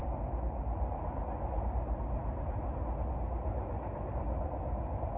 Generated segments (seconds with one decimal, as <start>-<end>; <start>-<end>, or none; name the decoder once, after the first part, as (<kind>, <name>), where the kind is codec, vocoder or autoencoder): none